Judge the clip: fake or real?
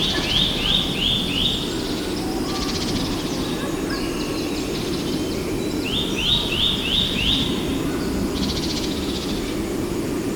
real